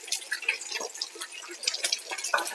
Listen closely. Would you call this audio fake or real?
real